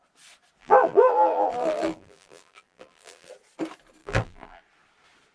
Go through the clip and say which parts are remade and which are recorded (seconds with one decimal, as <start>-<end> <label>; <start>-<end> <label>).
0.0-0.6 recorded; 0.6-3.3 remade; 3.3-4.0 recorded; 4.0-4.6 remade; 4.6-5.3 recorded